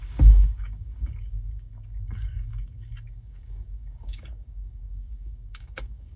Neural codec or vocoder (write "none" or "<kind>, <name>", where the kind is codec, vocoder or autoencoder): codec, DAC